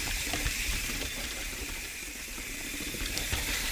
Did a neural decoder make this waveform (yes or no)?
yes